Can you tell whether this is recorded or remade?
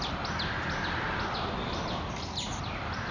recorded